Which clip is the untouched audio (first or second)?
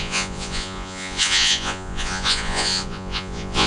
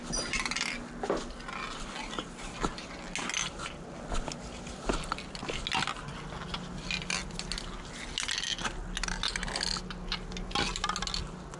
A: second